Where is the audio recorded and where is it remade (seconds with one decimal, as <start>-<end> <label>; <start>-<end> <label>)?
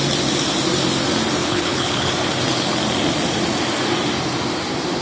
0.0-1.4 recorded; 1.4-2.1 remade; 2.1-5.0 recorded